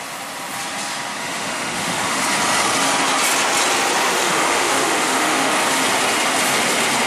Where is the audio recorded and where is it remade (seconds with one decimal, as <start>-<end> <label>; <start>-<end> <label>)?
0.0-1.2 recorded; 1.2-2.2 remade; 2.2-4.1 recorded; 4.1-5.5 remade; 5.5-7.1 recorded